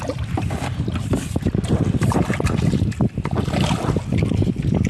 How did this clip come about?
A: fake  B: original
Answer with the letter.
B